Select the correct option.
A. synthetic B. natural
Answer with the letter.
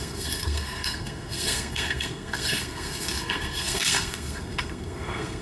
A